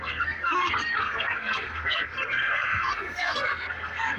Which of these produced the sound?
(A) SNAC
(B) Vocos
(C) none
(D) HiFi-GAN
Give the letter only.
A